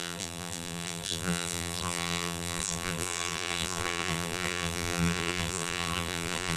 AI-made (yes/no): yes